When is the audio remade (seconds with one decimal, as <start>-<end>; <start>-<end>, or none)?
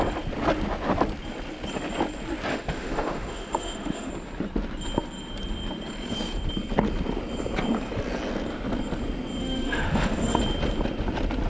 2.5-4.1; 9.4-10.4